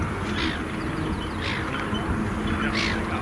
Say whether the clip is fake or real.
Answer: real